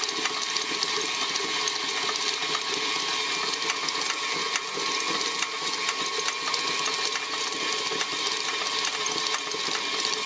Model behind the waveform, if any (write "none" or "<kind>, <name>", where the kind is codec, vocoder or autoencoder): none